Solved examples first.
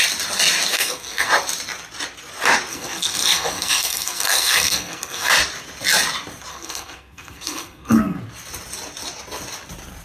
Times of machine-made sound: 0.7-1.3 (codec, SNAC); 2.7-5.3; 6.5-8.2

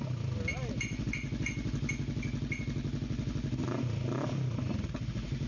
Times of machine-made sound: none

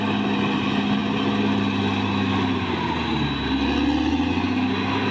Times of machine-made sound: none